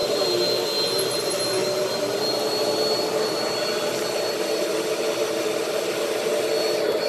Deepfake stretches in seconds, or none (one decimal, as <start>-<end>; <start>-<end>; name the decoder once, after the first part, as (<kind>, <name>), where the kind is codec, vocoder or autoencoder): none